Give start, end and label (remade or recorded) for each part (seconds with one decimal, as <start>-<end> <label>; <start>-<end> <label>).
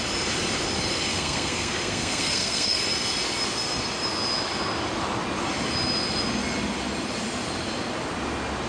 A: 0.0-1.1 recorded; 1.1-2.8 remade; 2.8-8.7 recorded